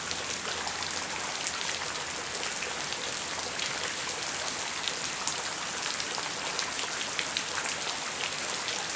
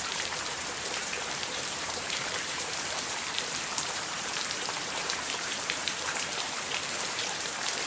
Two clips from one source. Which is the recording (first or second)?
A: first